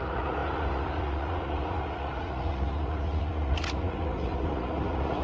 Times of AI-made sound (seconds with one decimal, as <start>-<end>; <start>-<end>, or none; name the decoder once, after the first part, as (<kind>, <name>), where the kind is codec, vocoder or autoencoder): 0.0-5.2 (vocoder, Vocos)